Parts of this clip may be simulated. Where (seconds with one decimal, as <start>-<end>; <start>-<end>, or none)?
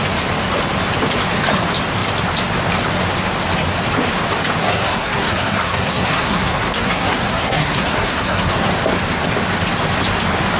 4.6-8.7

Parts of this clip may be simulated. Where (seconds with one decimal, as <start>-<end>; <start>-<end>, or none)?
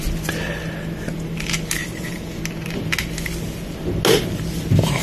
1.8-2.4